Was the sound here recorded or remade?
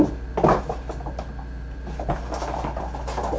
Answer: recorded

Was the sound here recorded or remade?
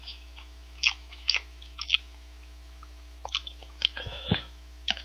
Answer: remade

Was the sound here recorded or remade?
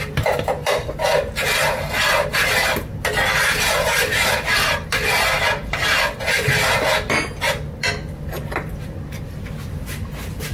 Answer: recorded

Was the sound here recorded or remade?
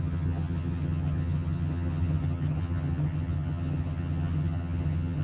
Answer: remade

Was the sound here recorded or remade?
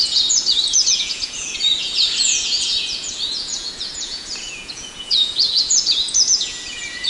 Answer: remade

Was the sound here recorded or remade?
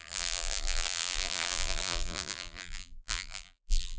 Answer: remade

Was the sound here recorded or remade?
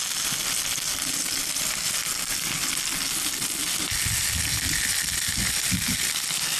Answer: recorded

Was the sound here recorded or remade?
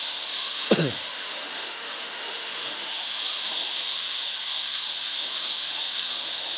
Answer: remade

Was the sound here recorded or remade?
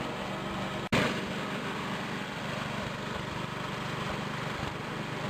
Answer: recorded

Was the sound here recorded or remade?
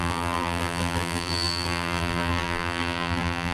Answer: remade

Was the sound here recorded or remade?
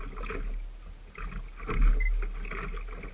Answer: recorded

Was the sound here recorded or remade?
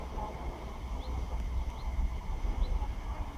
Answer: recorded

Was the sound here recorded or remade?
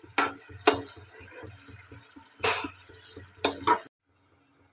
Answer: recorded